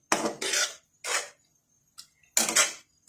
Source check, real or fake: real